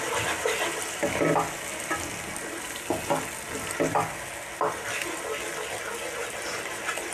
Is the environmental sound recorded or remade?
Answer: recorded